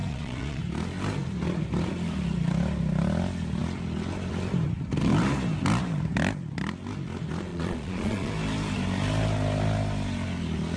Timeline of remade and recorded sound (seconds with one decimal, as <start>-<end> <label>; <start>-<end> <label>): 0.0-0.6 remade; 0.6-7.5 recorded; 7.5-8.3 remade; 8.3-10.8 recorded